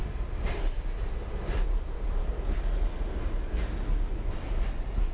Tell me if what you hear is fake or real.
real